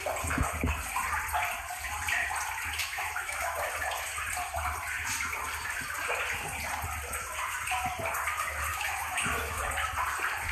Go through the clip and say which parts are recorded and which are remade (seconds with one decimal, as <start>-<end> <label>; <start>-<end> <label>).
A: 0.0-2.8 recorded; 2.8-3.7 remade; 3.7-8.7 recorded; 8.7-9.6 remade; 9.6-10.5 recorded

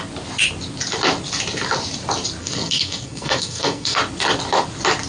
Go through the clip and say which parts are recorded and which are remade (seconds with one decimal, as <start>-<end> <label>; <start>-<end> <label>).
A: 0.0-2.4 recorded; 2.4-4.0 remade; 4.0-5.1 recorded

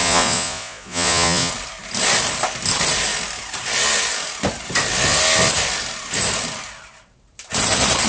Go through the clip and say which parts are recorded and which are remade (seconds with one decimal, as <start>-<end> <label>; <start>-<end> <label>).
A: 0.0-1.5 remade; 1.5-8.1 recorded

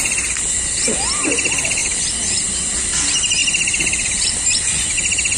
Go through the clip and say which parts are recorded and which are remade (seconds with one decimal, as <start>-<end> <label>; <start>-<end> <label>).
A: 0.0-1.8 recorded; 1.8-2.5 remade; 2.5-3.4 recorded; 3.4-4.9 remade; 4.9-5.4 recorded

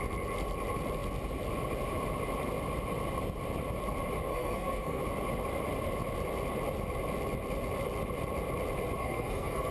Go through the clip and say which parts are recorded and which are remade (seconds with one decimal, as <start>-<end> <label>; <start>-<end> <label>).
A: 0.0-4.3 recorded; 4.3-5.0 remade; 5.0-9.0 recorded; 9.0-9.7 remade

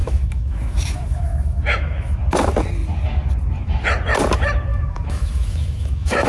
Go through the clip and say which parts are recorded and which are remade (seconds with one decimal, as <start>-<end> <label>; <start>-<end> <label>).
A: 0.0-2.2 remade; 2.2-4.7 recorded; 4.7-6.3 remade